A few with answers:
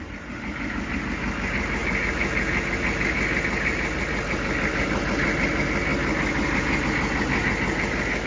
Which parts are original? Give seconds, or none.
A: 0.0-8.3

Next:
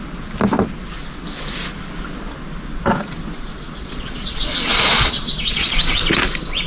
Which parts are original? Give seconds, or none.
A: 0.0-3.5; 5.7-6.7

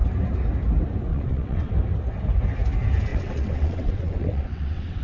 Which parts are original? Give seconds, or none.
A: 0.0-1.1; 1.7-3.1

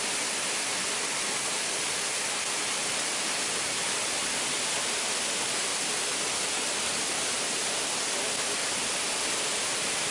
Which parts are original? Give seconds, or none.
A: 0.0-10.1

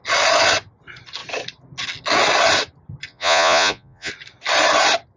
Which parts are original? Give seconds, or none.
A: 0.0-3.1; 4.1-5.2